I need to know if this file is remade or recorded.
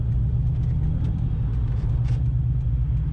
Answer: recorded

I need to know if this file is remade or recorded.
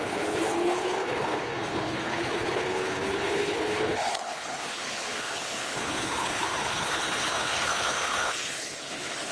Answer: remade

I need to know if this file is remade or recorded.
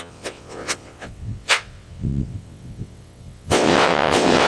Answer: remade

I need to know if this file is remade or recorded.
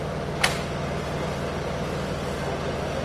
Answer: recorded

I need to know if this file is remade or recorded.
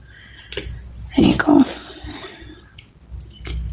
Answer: recorded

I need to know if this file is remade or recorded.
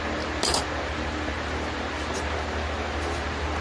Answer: recorded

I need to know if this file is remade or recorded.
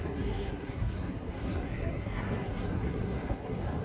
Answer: remade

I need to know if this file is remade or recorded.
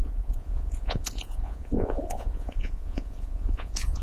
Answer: remade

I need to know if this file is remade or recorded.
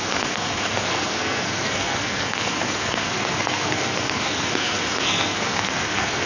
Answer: remade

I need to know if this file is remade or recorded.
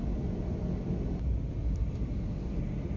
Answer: recorded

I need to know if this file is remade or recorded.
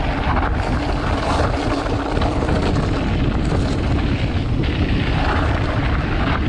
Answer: recorded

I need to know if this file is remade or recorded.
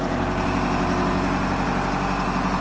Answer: recorded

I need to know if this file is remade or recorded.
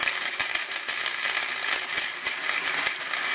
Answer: remade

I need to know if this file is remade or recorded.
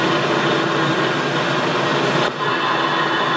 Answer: recorded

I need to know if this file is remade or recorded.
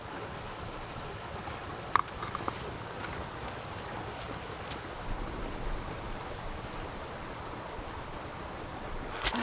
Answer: recorded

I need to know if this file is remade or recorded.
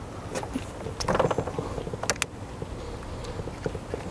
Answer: recorded